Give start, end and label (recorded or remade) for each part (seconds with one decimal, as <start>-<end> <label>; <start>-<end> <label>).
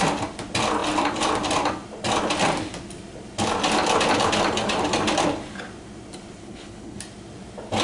0.0-6.4 recorded; 6.4-7.0 remade; 7.0-7.8 recorded